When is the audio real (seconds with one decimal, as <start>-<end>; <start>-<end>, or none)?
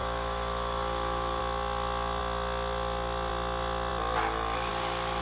1.4-5.2